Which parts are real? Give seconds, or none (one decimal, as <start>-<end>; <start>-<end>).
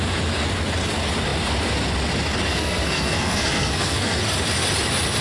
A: 0.0-2.5; 4.2-5.2